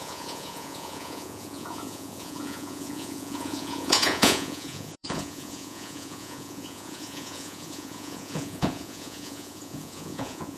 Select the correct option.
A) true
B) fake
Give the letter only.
B